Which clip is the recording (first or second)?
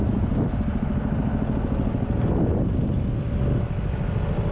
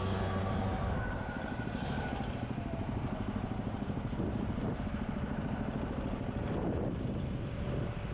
first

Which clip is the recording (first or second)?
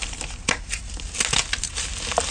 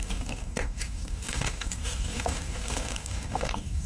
first